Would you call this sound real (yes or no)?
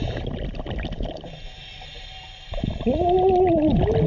yes